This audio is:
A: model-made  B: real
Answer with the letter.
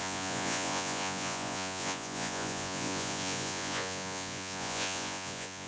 A